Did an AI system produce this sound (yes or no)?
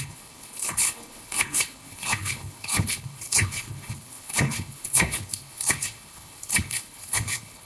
yes